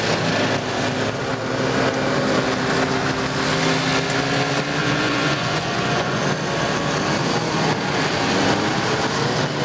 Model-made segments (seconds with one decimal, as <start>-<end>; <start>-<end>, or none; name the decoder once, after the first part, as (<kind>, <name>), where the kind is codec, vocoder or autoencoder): 4.8-6.2 (vocoder, Vocos)